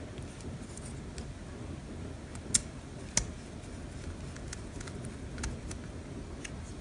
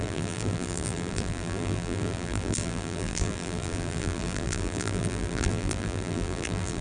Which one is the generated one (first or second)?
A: second